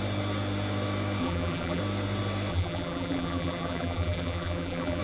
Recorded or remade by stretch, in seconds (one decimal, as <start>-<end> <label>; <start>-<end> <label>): 0.0-1.2 recorded; 1.2-1.8 remade; 1.8-2.5 recorded; 2.5-5.0 remade